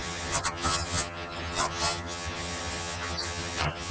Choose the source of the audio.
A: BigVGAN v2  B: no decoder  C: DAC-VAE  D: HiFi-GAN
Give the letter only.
D